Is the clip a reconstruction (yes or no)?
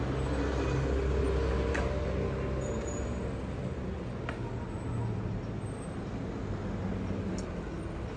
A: no